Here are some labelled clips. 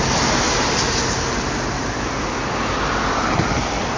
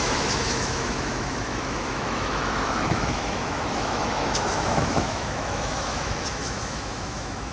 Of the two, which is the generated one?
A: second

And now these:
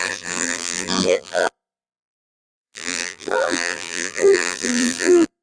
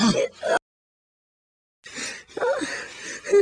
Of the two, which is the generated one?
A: first